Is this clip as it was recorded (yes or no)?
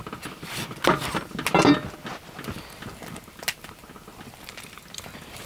yes